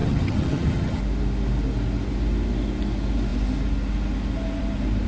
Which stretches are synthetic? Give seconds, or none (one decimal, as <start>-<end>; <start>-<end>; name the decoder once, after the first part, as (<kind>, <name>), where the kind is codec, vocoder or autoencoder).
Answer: 0.0-1.0 (vocoder, HiFi-GAN)

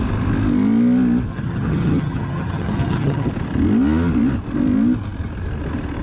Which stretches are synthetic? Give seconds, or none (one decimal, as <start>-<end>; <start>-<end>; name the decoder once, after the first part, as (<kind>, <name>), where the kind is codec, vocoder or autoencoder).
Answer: 1.3-3.3 (vocoder, HiFi-GAN)

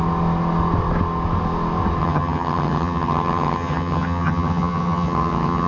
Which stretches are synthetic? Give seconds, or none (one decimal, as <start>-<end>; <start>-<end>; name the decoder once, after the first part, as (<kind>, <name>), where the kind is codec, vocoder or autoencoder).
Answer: 2.0-5.7 (vocoder, HiFi-GAN)

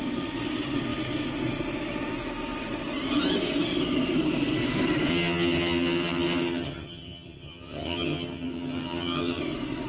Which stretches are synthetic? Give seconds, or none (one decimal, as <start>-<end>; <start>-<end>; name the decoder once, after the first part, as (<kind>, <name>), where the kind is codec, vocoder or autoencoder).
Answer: 5.1-9.4 (vocoder, HiFi-GAN)